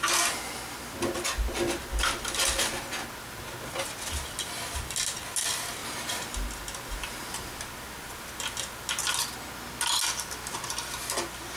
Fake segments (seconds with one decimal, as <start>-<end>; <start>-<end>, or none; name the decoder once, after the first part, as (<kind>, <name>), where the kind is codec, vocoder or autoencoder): none